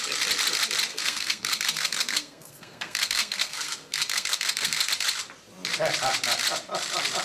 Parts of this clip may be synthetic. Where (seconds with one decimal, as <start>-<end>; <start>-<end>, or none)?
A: 0.9-4.9